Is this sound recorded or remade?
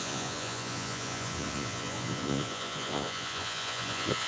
remade